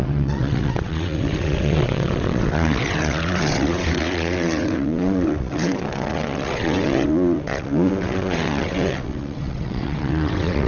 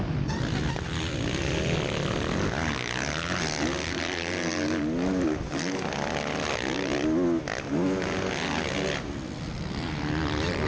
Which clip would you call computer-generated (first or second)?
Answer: first